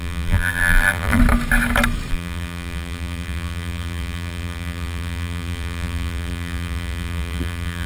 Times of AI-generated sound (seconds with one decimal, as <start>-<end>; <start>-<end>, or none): 0.0-1.2; 2.1-7.9